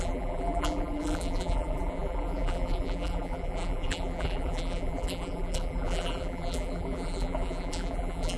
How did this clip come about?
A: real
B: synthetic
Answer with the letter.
B